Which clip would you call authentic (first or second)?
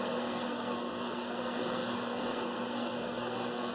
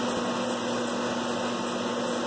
second